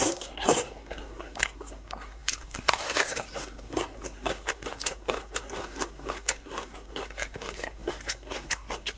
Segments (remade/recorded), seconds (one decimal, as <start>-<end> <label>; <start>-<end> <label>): 0.0-9.0 remade